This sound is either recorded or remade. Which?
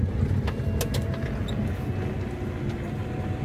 recorded